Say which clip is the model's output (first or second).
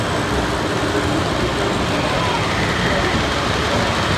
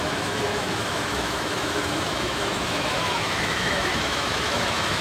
second